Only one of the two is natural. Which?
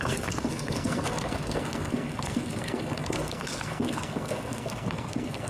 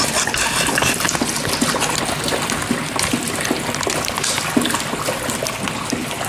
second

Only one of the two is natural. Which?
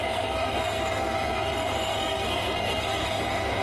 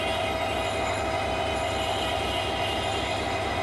second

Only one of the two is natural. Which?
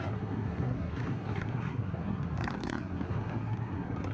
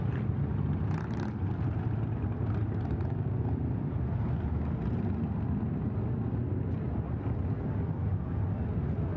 second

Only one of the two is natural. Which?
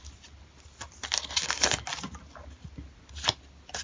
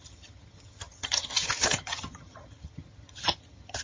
first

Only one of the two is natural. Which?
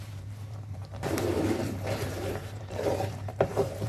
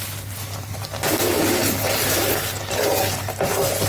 second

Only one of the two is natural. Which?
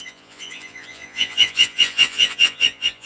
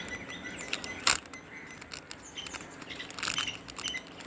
second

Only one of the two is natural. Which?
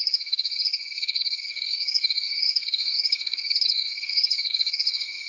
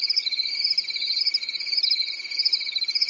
second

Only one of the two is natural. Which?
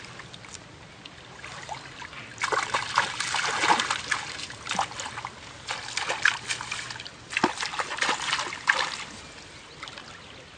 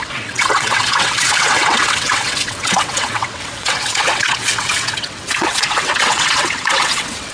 first